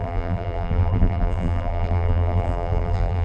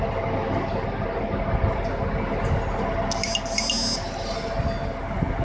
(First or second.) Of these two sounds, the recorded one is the second